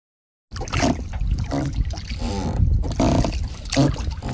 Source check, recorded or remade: recorded